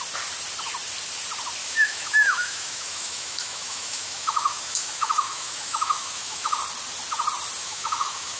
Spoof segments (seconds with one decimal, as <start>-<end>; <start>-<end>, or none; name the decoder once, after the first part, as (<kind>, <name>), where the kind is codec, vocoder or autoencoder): 1.6-6.6 (autoencoder, DAC-VAE); 7.6-8.4